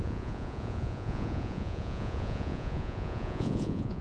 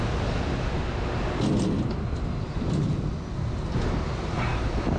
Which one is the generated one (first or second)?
first